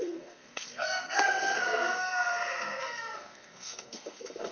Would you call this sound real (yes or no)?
no